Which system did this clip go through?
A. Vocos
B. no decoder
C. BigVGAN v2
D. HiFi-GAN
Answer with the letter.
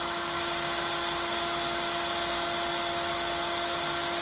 B